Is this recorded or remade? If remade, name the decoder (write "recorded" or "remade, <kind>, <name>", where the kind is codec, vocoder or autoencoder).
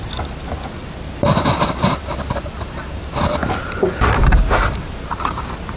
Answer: recorded